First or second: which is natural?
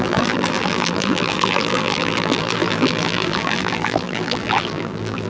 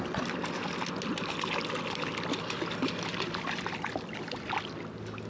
second